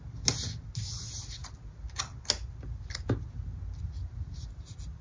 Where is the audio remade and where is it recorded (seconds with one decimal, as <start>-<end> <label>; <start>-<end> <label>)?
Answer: 0.0-5.0 recorded